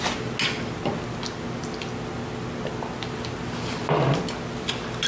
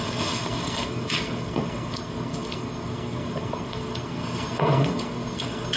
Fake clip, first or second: second